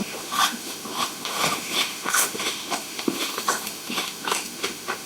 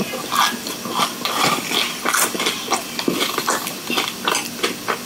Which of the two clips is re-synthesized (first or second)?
first